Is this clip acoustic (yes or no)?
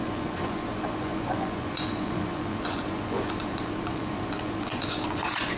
no